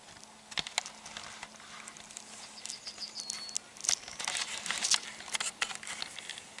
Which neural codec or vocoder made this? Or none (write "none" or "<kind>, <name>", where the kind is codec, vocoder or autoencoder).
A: none